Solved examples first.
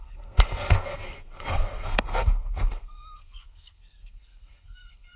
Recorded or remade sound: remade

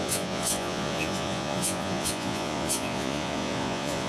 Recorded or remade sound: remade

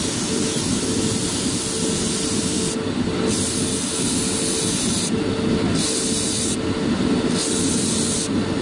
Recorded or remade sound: recorded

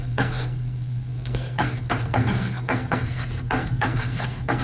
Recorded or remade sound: remade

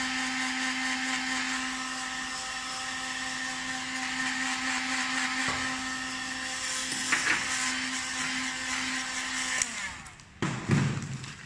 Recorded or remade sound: recorded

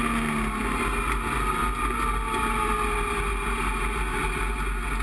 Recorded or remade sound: recorded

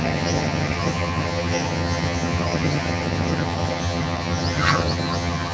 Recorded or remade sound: remade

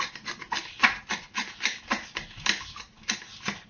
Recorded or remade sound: recorded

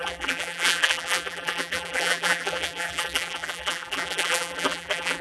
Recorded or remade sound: remade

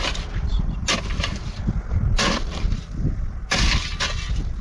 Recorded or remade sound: recorded